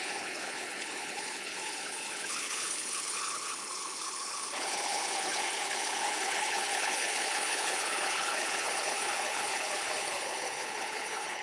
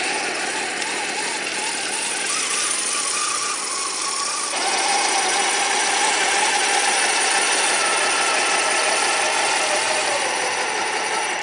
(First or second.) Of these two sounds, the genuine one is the second